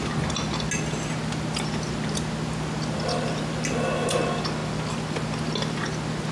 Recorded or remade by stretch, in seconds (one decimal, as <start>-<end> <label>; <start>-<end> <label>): 0.0-6.3 recorded